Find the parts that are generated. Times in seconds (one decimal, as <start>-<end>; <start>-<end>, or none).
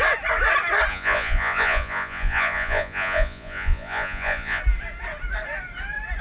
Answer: 0.9-4.6